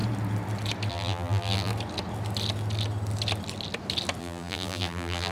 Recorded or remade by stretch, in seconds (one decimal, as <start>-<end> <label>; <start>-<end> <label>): 0.0-0.9 recorded; 0.9-1.7 remade; 1.7-4.2 recorded; 4.2-5.3 remade